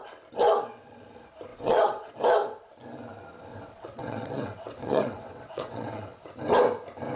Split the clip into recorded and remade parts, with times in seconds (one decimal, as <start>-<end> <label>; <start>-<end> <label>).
0.0-1.5 recorded; 1.5-2.1 remade; 2.1-3.5 recorded; 3.5-6.2 remade; 6.2-7.2 recorded